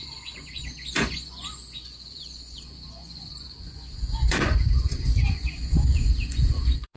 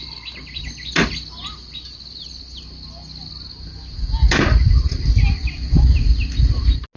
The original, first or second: second